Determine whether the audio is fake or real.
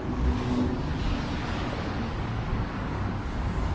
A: fake